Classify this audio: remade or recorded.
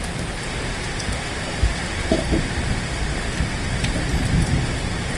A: remade